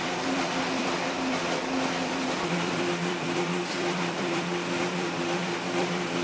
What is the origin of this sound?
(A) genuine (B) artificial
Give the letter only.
B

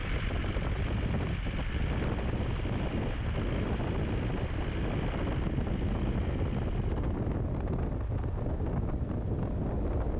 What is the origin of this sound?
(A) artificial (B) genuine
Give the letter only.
B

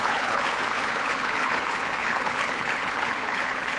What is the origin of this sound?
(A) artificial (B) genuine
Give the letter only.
A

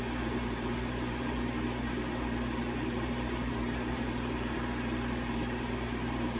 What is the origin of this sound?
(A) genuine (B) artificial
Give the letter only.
B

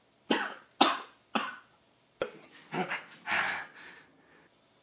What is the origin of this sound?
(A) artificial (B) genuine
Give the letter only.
B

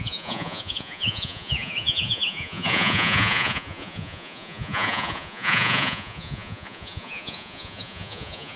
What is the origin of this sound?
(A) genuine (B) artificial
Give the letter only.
B